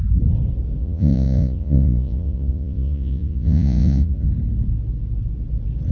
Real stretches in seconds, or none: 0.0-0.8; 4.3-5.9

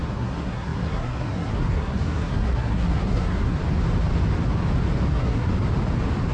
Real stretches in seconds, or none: 3.6-5.1; 5.5-6.3